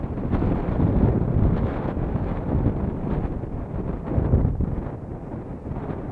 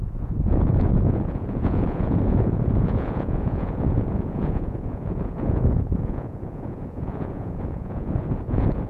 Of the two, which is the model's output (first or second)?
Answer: second